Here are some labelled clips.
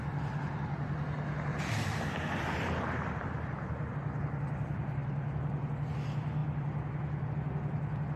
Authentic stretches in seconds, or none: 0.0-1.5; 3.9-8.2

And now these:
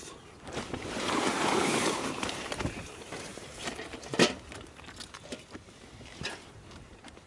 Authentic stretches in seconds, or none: 3.3-6.3